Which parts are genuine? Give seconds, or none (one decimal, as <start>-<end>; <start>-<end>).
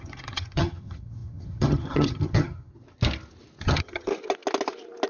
2.7-3.6; 4.1-5.1